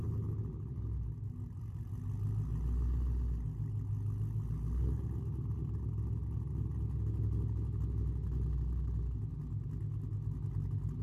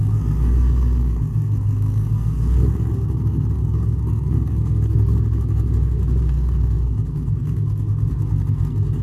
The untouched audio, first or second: first